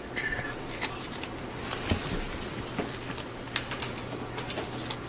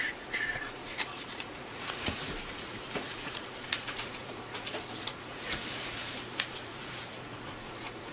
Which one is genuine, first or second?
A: first